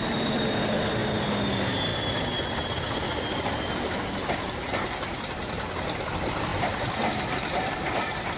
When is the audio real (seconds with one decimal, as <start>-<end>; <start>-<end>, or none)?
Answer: 1.0-1.5; 1.9-6.1